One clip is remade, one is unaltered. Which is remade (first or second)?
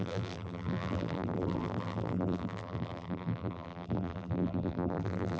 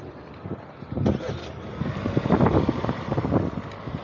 first